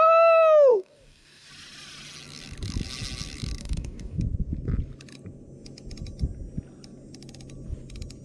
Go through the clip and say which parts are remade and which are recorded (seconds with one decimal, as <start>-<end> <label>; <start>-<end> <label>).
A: 0.0-0.7 recorded; 0.7-1.5 remade; 1.5-3.6 recorded; 3.6-4.2 remade; 4.2-8.2 recorded